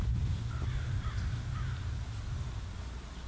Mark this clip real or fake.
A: real